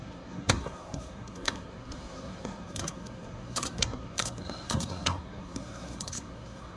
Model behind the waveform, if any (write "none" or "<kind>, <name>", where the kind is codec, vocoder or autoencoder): codec, SNAC